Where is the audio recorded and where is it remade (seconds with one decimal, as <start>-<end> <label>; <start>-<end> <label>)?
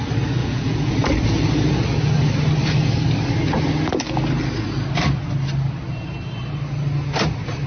0.0-0.4 recorded; 0.4-0.9 remade; 0.9-7.7 recorded